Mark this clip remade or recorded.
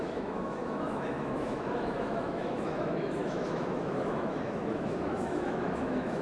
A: remade